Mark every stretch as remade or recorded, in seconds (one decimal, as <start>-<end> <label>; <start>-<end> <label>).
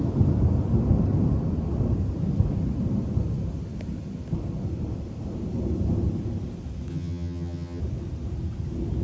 0.0-6.9 recorded; 6.9-7.8 remade; 7.8-9.0 recorded